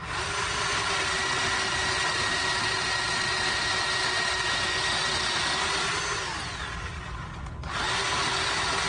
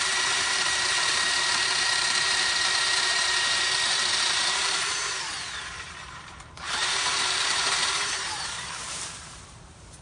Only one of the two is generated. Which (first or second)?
second